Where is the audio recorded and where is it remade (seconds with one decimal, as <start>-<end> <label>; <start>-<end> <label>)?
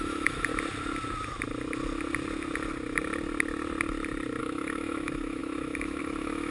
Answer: 0.0-0.5 remade; 0.5-4.4 recorded; 4.4-6.5 remade